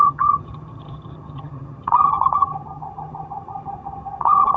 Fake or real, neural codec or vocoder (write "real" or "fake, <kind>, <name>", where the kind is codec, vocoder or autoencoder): fake, vocoder, HiFi-GAN